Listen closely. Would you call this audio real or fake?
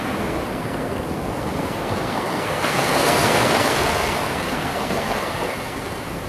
fake